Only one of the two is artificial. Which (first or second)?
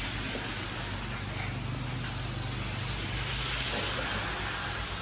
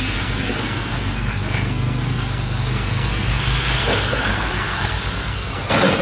second